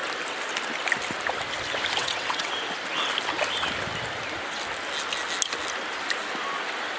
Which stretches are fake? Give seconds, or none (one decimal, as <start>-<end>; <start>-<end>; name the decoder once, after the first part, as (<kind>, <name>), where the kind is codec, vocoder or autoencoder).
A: 2.0-2.5 (vocoder, WaveNeXt)